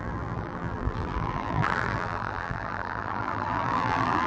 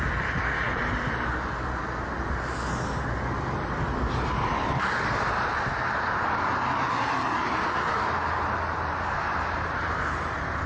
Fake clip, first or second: first